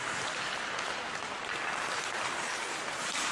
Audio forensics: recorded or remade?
recorded